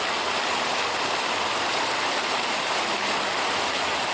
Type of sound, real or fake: real